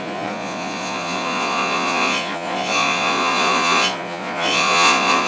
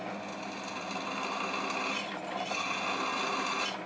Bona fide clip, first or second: second